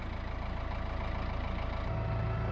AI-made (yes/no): no